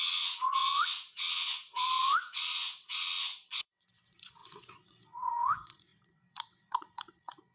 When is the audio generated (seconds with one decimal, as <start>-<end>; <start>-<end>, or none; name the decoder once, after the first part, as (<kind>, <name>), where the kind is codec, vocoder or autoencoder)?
0.0-7.5 (vocoder, WaveNeXt)